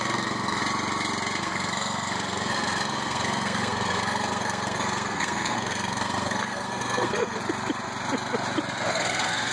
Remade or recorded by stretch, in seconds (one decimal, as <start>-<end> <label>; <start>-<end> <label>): 0.0-0.6 remade; 0.6-1.4 recorded; 1.4-7.4 remade; 7.4-8.9 recorded; 8.9-9.5 remade